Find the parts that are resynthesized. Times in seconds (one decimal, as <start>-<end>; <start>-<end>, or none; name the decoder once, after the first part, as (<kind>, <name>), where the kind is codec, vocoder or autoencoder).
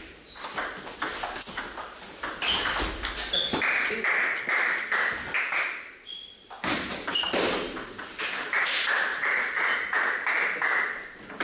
9.1-10.1 (vocoder, Vocos)